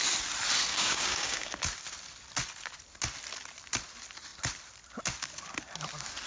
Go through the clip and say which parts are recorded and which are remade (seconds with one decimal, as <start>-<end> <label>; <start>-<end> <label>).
0.0-0.7 recorded; 0.7-1.5 remade; 1.5-6.3 recorded